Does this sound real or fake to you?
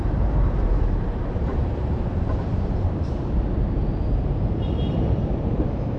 fake